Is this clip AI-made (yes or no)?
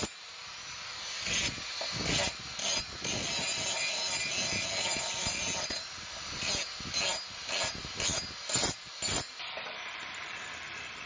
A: no